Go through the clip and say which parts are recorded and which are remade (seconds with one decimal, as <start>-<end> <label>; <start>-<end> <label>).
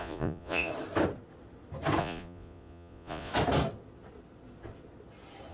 0.0-0.7 remade; 0.7-2.0 recorded; 2.0-3.3 remade; 3.3-5.5 recorded